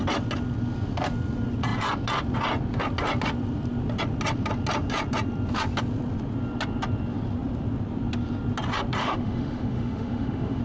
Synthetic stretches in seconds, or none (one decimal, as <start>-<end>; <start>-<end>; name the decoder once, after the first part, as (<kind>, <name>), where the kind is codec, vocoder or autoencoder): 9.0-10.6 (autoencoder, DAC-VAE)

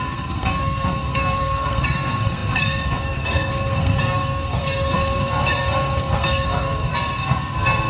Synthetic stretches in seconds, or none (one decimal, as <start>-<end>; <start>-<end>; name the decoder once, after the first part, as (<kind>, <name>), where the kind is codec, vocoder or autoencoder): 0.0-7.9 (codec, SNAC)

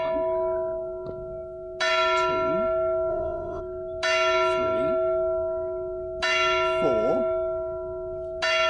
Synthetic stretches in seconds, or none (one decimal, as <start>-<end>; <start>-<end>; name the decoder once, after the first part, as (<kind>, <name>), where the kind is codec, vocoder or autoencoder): 3.1-3.6 (vocoder, Vocos)